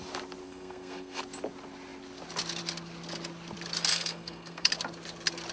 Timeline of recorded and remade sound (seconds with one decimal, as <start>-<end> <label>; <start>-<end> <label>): 0.0-0.4 recorded; 0.4-1.2 remade; 1.2-3.9 recorded; 3.9-4.7 remade; 4.7-5.5 recorded

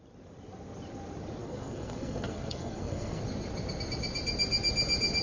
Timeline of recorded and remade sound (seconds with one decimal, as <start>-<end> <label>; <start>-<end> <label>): 0.0-1.4 recorded; 1.4-3.2 remade; 3.2-5.2 recorded

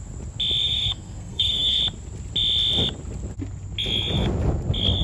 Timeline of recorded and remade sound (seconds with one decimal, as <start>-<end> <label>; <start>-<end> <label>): 0.0-0.6 recorded; 0.6-1.8 remade; 1.8-5.0 recorded

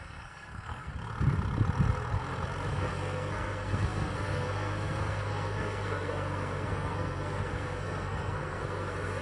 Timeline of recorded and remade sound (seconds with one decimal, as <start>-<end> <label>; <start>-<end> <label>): 0.0-0.9 remade; 0.9-2.7 recorded; 2.7-9.2 remade

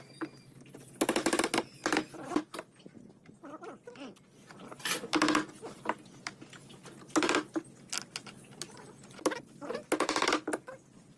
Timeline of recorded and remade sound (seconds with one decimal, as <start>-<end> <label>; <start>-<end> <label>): 0.0-11.2 recorded

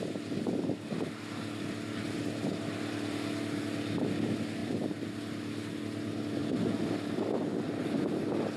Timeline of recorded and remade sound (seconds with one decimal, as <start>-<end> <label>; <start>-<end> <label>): 0.0-8.6 recorded

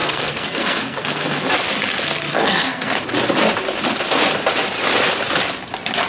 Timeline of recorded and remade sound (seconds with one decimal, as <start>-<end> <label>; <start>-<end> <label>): 0.0-1.5 remade; 1.5-2.3 recorded; 2.3-3.0 remade; 3.0-6.1 recorded

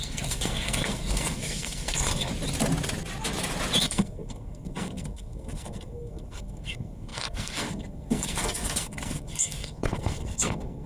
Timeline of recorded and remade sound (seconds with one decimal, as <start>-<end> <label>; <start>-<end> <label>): 0.0-2.3 remade; 2.3-3.8 recorded; 3.8-10.9 remade